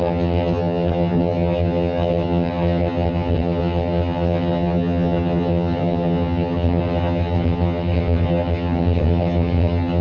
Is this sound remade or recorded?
remade